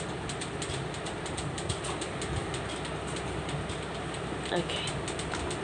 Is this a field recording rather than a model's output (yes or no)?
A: yes